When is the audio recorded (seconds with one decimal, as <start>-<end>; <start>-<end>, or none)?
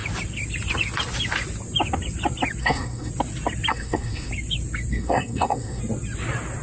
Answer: 0.0-2.6; 3.1-3.7; 4.3-4.9; 5.8-6.6